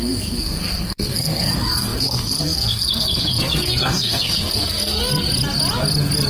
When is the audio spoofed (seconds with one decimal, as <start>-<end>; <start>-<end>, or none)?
0.0-5.1